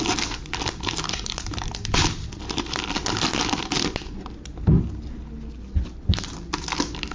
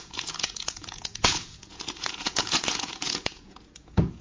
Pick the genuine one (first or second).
first